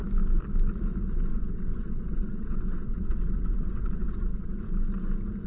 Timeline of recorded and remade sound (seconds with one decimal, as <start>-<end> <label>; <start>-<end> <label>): 0.0-1.3 recorded; 1.3-4.6 remade; 4.6-5.5 recorded